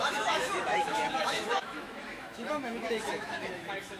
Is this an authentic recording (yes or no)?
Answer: no